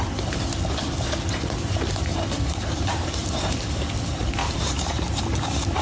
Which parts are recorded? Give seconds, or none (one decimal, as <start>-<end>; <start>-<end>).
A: 0.0-2.1; 3.9-4.4; 5.0-5.8